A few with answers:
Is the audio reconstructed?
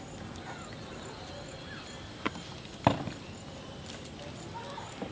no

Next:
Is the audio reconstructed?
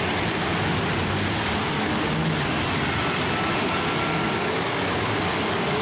no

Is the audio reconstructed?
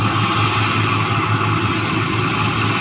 no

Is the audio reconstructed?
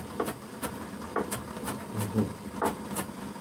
no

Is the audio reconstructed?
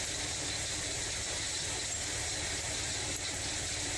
yes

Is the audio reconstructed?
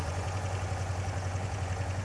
yes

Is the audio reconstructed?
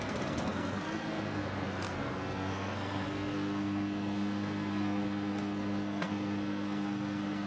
yes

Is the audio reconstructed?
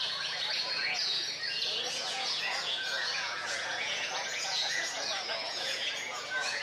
yes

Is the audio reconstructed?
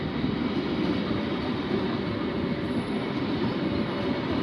no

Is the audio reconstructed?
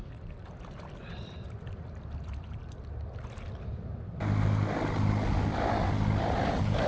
no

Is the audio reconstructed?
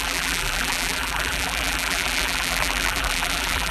yes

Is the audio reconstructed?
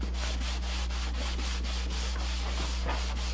no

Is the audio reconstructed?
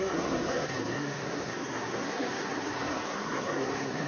yes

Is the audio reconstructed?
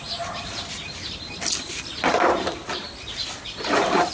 no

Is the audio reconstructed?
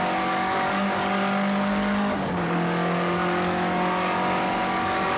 yes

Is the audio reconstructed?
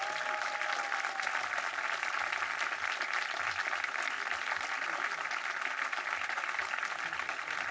no